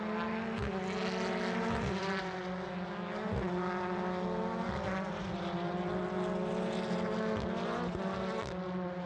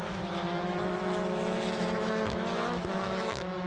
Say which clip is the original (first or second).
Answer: first